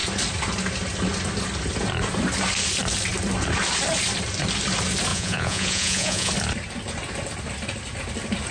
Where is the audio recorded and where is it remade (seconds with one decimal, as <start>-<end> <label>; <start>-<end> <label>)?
0.0-5.1 recorded; 5.1-6.3 remade; 6.3-8.5 recorded

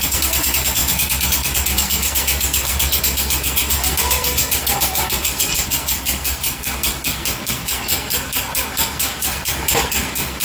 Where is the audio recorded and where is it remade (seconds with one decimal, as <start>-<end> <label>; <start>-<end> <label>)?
0.0-10.4 remade

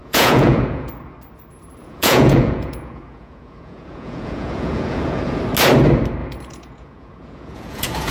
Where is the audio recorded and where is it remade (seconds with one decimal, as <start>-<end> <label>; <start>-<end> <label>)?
0.0-0.9 remade; 0.9-1.8 recorded; 1.8-5.2 remade; 5.2-6.2 recorded; 6.2-8.1 remade

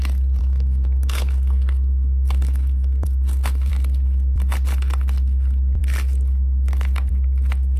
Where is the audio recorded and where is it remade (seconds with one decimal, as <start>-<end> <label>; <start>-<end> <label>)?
0.0-0.4 recorded; 0.4-3.7 remade; 3.7-7.8 recorded

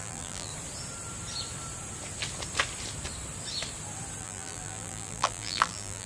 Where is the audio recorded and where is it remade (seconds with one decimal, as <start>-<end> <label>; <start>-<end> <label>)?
0.0-0.5 remade; 0.5-4.2 recorded; 4.2-6.1 remade

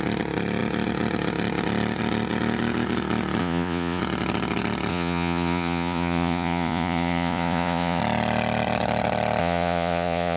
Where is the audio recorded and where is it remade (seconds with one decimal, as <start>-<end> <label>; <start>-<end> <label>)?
0.0-3.4 recorded; 3.4-4.0 remade; 4.0-4.9 recorded; 4.9-8.0 remade; 8.0-9.4 recorded; 9.4-10.4 remade

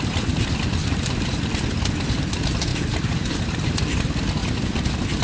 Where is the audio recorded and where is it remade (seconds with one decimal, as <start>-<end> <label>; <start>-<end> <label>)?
0.0-0.8 recorded; 0.8-1.4 remade; 1.4-2.7 recorded; 2.7-3.5 remade; 3.5-5.2 recorded

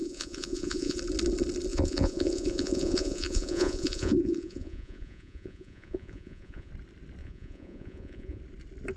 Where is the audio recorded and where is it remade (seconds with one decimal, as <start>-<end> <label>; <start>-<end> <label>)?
0.0-1.0 remade; 1.0-1.7 recorded; 1.7-6.7 remade; 6.7-7.2 recorded; 7.2-8.4 remade; 8.4-9.0 recorded